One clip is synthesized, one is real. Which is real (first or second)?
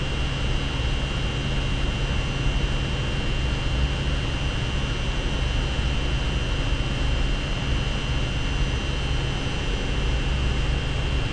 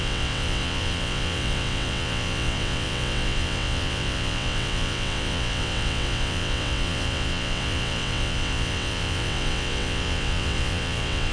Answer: first